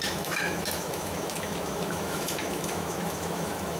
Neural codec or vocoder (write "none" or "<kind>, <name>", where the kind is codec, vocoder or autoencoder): autoencoder, DAC-VAE